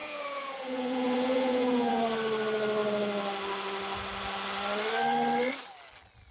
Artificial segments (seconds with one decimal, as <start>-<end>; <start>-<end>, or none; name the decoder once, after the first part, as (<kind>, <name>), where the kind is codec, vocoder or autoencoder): 0.0-2.0 (vocoder, Vocos)